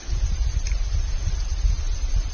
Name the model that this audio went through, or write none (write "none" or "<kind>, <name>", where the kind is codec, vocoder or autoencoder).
none